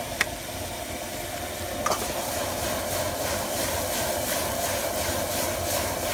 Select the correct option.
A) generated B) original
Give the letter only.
B